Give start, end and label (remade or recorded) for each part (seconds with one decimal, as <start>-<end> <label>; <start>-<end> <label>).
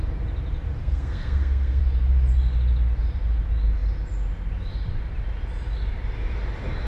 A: 0.0-0.8 recorded; 0.8-1.8 remade; 1.8-6.9 recorded